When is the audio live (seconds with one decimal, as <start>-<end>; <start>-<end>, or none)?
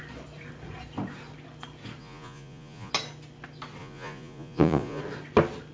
0.0-2.0; 2.9-3.8; 5.0-5.7